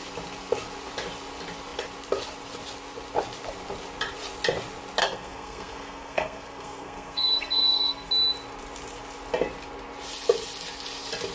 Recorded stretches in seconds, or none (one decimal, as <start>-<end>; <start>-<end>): 0.0-5.0; 8.1-11.3